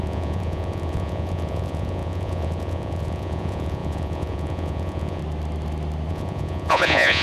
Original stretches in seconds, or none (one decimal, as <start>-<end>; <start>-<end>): 5.2-6.1